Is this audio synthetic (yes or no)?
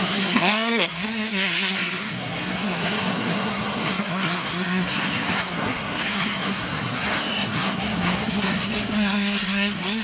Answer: yes